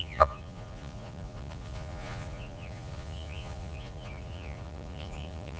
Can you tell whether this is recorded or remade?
remade